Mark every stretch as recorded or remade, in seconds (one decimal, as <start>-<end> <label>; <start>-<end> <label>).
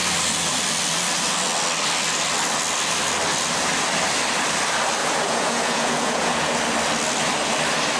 0.0-5.0 recorded; 5.0-6.5 remade; 6.5-8.0 recorded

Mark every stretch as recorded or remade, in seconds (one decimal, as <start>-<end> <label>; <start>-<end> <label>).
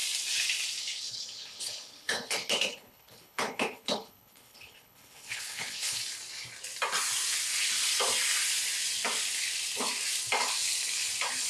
0.0-0.8 recorded; 0.8-6.0 remade; 6.0-11.5 recorded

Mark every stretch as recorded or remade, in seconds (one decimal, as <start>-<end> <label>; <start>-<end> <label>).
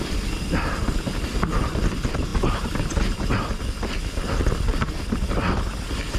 0.0-6.2 recorded